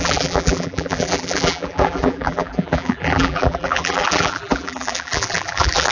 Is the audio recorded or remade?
remade